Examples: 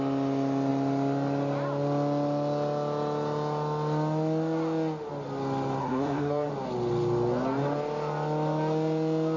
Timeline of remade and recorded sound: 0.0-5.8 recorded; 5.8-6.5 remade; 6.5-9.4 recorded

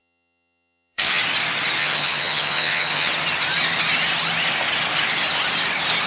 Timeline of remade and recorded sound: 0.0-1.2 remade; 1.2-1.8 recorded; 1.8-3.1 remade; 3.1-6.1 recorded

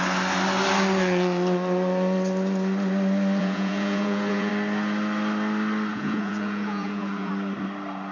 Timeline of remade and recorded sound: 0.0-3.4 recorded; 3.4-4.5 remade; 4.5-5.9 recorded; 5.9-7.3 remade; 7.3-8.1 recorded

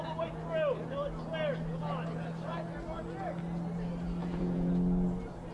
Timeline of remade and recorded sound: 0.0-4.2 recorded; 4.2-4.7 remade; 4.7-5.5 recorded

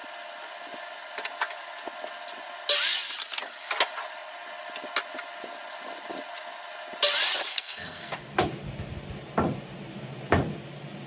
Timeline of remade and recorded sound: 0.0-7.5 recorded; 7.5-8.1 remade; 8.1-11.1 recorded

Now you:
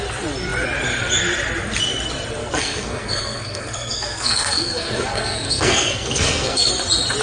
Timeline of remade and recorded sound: 0.0-2.4 recorded; 2.4-6.7 remade; 6.7-7.2 recorded

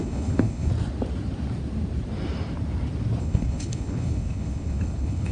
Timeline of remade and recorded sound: 0.0-0.7 remade; 0.7-3.2 recorded; 3.2-5.3 remade

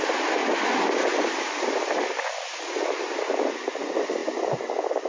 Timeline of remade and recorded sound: 0.0-5.1 recorded